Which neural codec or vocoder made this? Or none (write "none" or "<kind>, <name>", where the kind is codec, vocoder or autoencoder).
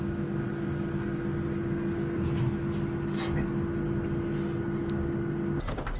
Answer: none